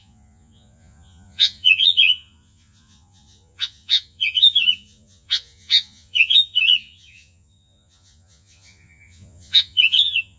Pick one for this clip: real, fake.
fake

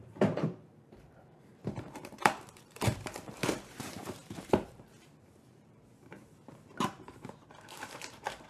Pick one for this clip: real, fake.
fake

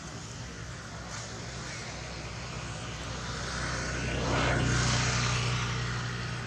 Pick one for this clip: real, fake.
real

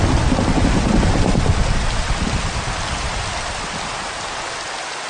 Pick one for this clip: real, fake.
real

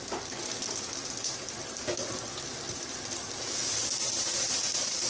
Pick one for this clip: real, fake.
real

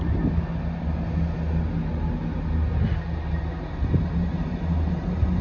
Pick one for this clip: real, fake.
real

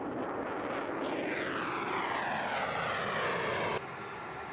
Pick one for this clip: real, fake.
real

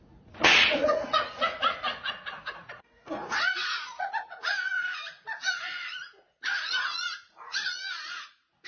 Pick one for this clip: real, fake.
fake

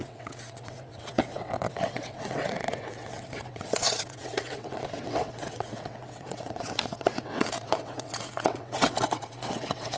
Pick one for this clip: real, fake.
fake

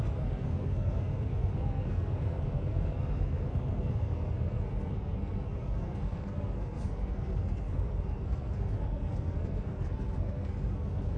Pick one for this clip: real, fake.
fake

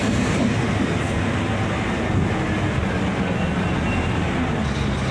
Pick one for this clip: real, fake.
real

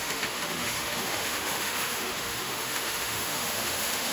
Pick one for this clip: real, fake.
fake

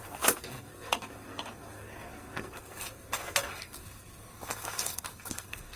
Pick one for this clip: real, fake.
fake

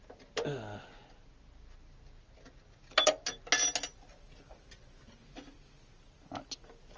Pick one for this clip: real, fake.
real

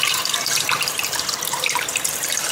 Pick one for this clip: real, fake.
fake